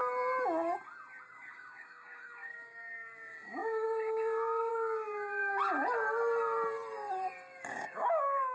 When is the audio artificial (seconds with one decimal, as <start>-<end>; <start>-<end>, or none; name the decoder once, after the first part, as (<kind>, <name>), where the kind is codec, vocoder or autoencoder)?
1.3-5.6 (codec, DAC); 7.7-8.5